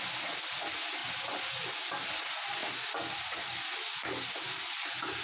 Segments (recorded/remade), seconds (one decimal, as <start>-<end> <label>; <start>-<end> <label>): 0.0-5.2 recorded